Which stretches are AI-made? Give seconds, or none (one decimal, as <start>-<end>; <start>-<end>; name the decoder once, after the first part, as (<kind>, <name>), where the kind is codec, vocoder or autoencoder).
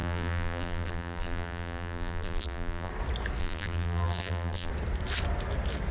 0.0-2.9 (vocoder, BigVGAN v2); 3.4-4.7